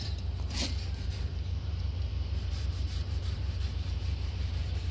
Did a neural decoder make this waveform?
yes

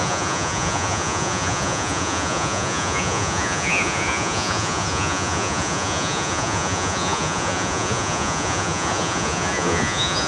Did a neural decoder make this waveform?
yes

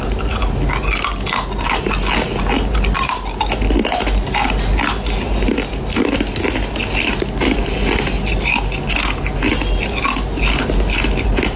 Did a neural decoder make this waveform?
no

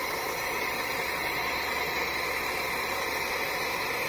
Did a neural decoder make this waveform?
no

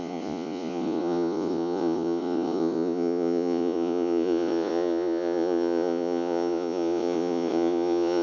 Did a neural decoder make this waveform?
yes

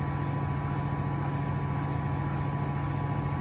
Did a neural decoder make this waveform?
no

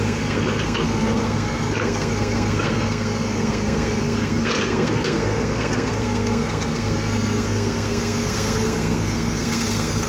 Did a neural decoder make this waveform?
yes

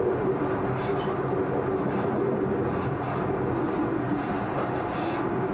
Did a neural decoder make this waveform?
no